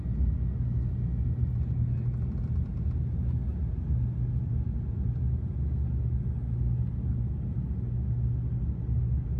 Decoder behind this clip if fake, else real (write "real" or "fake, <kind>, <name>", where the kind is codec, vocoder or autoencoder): real